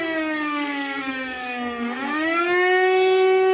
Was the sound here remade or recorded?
remade